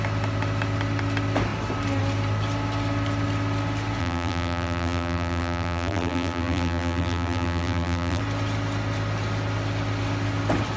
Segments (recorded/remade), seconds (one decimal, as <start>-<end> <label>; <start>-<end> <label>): 0.0-4.0 recorded; 4.0-8.2 remade; 8.2-10.8 recorded